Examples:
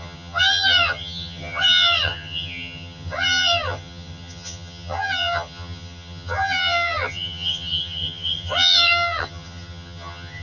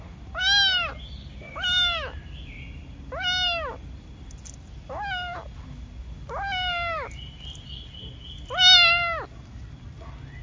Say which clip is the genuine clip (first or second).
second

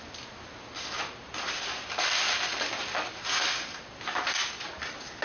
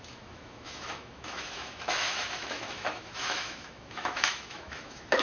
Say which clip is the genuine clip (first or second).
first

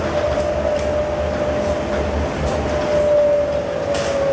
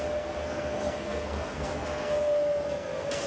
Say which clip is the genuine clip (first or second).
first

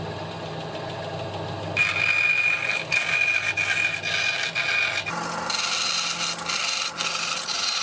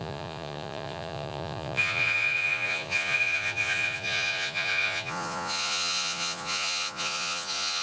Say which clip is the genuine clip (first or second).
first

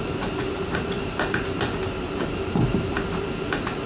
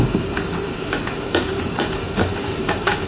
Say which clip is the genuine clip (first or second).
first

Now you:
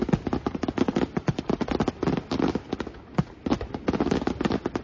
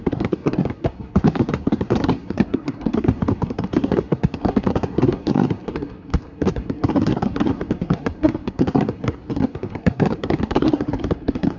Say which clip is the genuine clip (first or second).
first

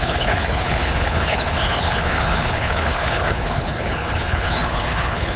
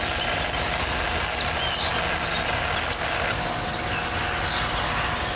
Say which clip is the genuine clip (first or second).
second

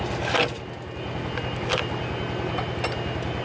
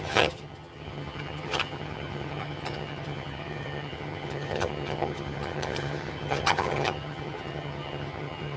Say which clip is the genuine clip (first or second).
first